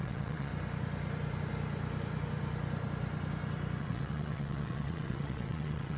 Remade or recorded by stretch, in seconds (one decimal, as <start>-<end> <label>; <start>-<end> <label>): 0.0-0.5 remade; 0.5-3.8 recorded; 3.8-6.0 remade